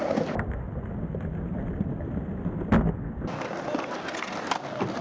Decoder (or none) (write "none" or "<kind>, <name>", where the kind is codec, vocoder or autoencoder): none